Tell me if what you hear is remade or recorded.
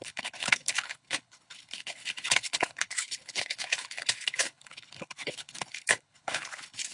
remade